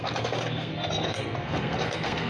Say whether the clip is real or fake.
fake